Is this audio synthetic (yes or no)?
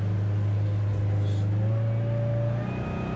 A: no